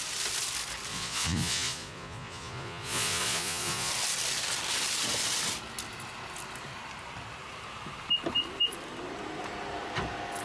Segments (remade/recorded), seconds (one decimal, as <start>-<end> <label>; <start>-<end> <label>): 0.0-0.9 recorded; 0.9-3.9 remade; 3.9-10.4 recorded